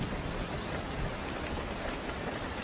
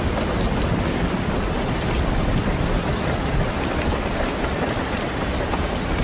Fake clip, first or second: second